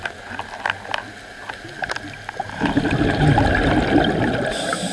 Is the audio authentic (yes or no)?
yes